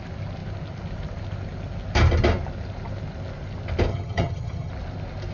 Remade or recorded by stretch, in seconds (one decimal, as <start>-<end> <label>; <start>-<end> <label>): 0.0-3.9 recorded; 3.9-4.7 remade; 4.7-5.3 recorded